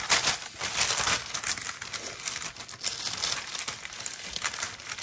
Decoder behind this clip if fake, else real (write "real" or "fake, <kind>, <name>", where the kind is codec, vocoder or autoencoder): real